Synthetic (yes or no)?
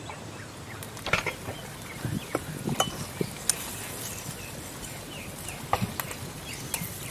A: no